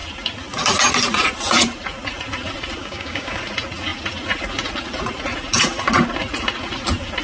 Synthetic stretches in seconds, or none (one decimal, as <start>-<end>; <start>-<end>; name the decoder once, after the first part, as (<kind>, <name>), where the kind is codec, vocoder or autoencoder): 2.8-3.4 (codec, DAC)